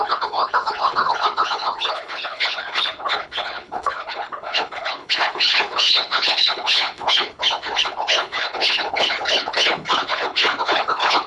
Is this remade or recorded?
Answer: remade